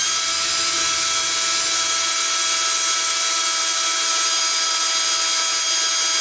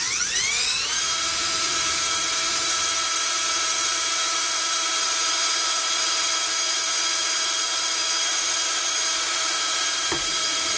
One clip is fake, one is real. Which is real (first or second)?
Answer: first